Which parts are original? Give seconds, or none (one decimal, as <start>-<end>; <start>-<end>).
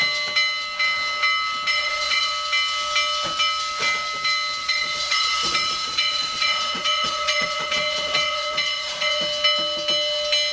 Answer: 0.0-1.7; 2.3-4.6; 9.2-10.5